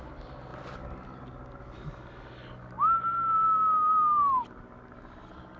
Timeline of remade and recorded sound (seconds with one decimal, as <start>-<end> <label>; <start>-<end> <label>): 0.0-3.2 recorded; 3.2-4.4 remade; 4.4-5.6 recorded